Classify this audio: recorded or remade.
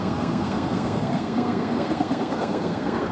remade